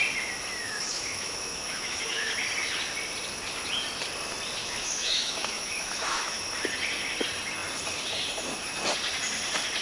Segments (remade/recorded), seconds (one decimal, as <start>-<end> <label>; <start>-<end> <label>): 0.0-0.6 recorded; 0.6-2.4 remade; 2.4-4.6 recorded; 4.6-6.4 remade; 6.4-9.8 recorded

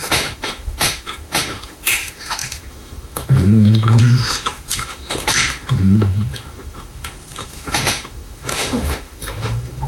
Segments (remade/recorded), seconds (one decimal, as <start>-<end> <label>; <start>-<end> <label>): 0.0-9.9 remade

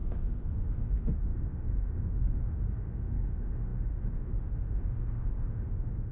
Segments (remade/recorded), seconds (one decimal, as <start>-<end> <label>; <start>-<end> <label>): 0.0-6.1 remade

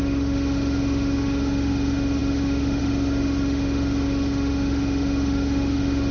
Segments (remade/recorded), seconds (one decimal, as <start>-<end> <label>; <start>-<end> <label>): 0.0-6.1 remade